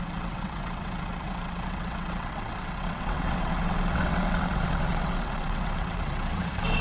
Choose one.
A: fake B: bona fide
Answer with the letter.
A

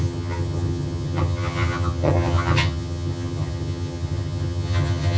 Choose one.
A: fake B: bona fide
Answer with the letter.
A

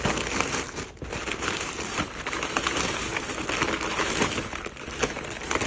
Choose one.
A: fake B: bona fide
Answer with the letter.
B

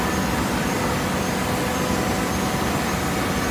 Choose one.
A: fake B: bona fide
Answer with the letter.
B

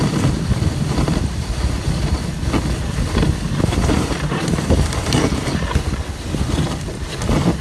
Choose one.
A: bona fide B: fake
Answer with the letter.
A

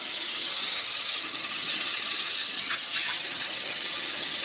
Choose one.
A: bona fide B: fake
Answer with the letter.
B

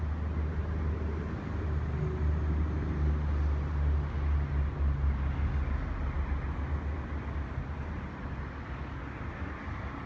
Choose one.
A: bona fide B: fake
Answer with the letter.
A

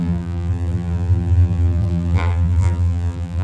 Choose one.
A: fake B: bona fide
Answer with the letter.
A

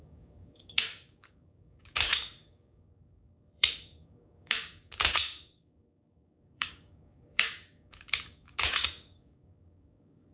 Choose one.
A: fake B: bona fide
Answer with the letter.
A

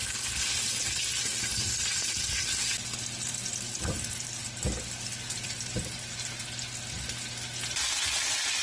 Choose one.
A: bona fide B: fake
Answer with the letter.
A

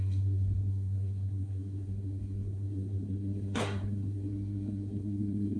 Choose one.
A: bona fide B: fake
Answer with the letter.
B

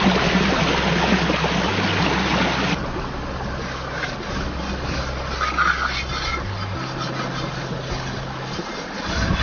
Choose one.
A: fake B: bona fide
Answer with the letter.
B